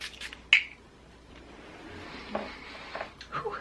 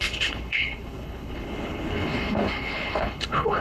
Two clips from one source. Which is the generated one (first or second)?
second